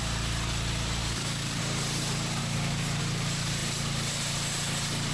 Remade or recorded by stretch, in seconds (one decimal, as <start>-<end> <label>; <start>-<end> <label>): 0.0-1.0 recorded; 1.0-1.6 remade; 1.6-2.4 recorded; 2.4-3.0 remade; 3.0-5.1 recorded